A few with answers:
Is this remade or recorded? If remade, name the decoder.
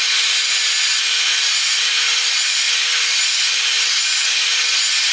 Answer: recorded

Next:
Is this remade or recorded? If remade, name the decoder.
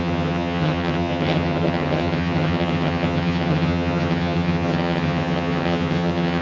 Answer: remade, vocoder, HiFi-GAN